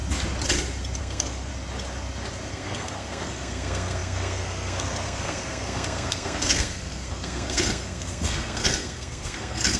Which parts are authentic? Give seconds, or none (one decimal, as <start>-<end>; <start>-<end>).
0.0-1.0; 1.5-2.5